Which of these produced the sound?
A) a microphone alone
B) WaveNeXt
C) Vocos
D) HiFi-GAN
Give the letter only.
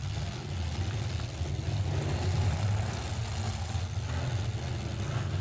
A